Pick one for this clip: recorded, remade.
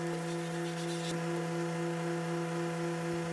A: recorded